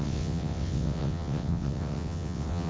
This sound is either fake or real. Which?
fake